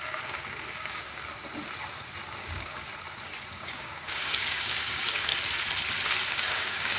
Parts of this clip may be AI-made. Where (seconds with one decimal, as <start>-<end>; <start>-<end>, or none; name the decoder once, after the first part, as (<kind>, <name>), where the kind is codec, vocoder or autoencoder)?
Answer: 0.0-1.3 (codec, DAC); 2.4-2.9; 3.5-5.3; 6.3-7.0